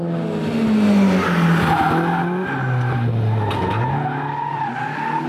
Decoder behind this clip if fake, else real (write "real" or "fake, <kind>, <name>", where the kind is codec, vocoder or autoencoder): real